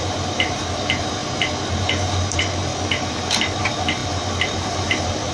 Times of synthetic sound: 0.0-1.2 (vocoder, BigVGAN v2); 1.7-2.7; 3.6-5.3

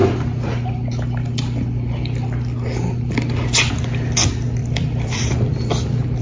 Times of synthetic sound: 4.6-5.3 (vocoder, BigVGAN v2)

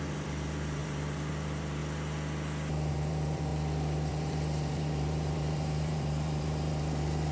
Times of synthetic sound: 0.0-1.8 (vocoder, BigVGAN v2); 2.9-3.5; 4.1-7.3